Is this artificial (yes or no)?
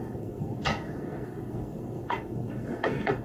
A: yes